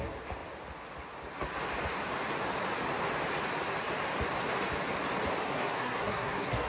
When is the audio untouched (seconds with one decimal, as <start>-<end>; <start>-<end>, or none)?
0.0-5.4